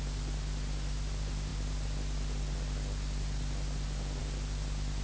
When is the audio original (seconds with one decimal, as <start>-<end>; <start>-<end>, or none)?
0.0-5.0